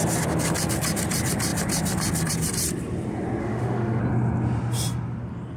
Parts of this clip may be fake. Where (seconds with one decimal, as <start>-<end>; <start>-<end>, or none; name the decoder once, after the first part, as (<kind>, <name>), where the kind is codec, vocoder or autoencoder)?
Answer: 3.4-4.0 (autoencoder, DAC-VAE)